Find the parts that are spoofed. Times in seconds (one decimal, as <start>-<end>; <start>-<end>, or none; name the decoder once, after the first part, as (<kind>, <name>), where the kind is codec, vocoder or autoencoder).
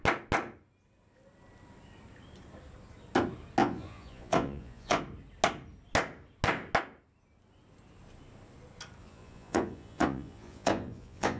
3.6-5.0 (vocoder, Vocos); 9.0-11.4